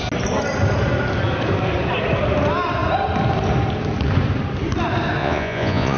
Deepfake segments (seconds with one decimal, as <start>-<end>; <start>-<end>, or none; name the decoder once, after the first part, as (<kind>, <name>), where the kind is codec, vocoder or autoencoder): 5.2-6.0 (vocoder, Vocos)